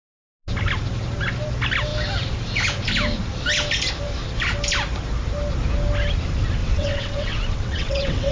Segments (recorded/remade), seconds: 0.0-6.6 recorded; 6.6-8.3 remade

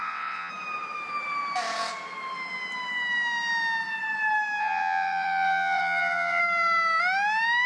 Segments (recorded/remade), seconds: 0.0-0.5 remade; 0.5-4.6 recorded; 4.6-6.4 remade; 6.4-7.7 recorded

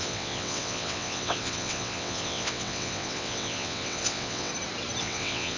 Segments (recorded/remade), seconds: 0.0-4.5 remade; 4.5-5.0 recorded; 5.0-5.6 remade

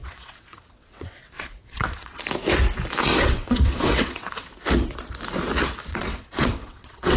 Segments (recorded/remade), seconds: 0.0-2.2 remade; 2.2-3.0 recorded; 3.0-4.5 remade; 4.5-5.9 recorded; 5.9-7.2 remade